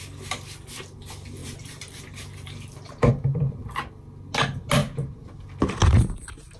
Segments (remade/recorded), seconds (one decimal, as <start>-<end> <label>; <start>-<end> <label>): 0.0-1.4 recorded; 1.4-3.1 remade; 3.1-6.6 recorded